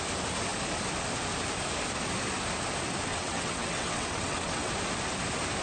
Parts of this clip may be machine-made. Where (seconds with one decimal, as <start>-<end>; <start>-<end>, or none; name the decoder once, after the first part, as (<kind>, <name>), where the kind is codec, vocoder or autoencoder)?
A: 3.1-4.7 (vocoder, WaveNeXt)